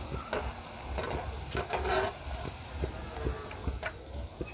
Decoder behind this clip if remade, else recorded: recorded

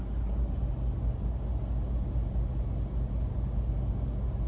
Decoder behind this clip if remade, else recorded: recorded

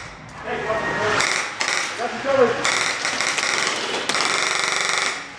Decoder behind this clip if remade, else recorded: recorded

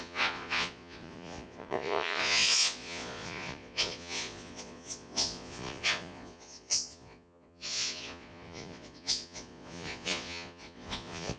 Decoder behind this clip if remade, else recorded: remade, vocoder, Vocos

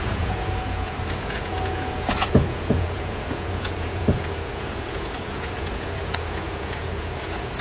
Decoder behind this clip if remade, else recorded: remade, vocoder, Vocos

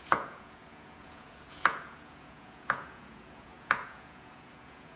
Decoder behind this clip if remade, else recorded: remade, vocoder, Vocos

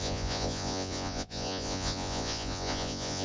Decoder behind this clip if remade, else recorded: remade, vocoder, Vocos